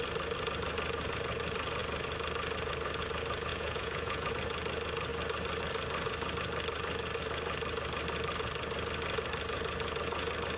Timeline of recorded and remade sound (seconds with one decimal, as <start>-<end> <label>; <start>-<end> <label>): 0.0-3.5 recorded; 3.5-4.3 remade; 4.3-10.6 recorded